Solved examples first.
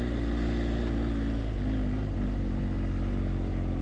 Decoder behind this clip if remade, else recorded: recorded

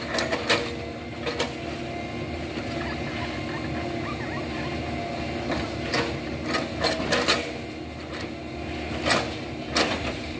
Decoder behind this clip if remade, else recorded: recorded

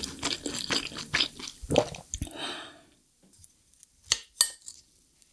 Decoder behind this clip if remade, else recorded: recorded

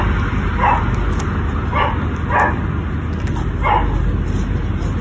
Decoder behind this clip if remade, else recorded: recorded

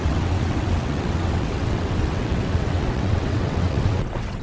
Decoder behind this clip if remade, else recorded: remade, vocoder, WaveNeXt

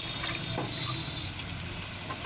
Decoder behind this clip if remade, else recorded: recorded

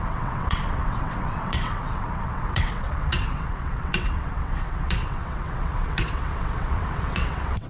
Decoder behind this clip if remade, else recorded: remade, vocoder, WaveNeXt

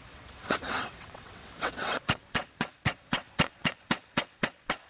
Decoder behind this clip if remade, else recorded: remade, vocoder, WaveNeXt